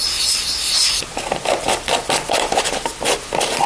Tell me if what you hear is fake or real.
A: real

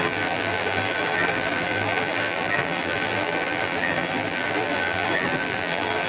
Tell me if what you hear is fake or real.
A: fake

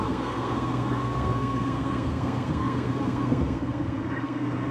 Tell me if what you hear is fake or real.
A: fake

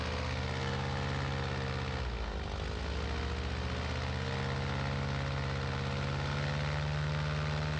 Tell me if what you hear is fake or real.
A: real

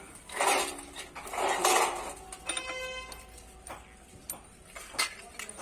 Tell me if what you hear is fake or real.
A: real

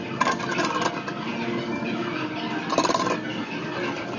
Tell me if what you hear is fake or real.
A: real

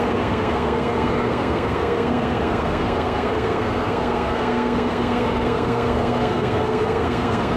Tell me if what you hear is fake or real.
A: fake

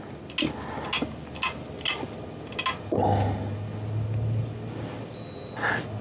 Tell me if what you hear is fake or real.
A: real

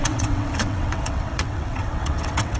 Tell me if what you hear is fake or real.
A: fake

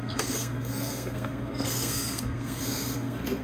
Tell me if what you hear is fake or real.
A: fake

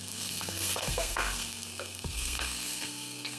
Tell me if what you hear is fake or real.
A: fake